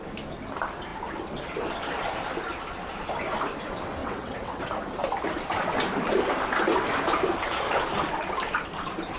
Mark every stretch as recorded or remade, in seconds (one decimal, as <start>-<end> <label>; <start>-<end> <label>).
0.0-4.0 recorded; 4.0-4.6 remade; 4.6-9.2 recorded